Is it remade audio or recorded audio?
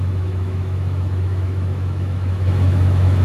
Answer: remade